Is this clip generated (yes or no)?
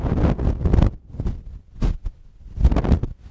no